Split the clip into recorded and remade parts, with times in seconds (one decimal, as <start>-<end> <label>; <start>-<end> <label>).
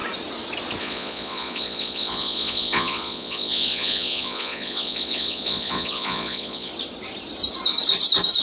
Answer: 0.0-0.8 recorded; 0.8-6.7 remade; 6.7-8.4 recorded